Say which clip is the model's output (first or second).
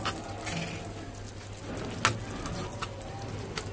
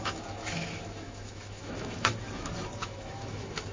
second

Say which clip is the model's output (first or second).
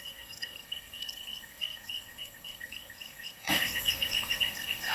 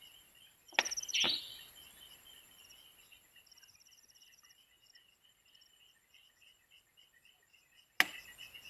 first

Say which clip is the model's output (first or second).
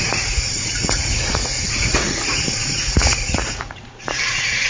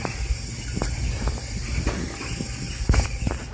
first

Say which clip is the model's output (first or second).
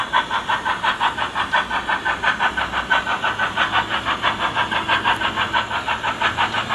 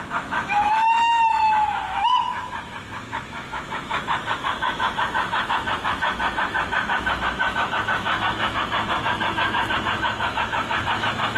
second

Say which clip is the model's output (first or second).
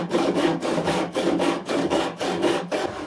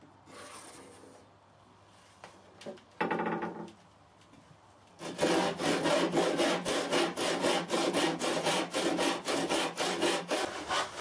first